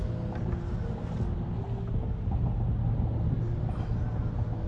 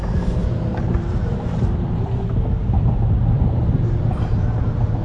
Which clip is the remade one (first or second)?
second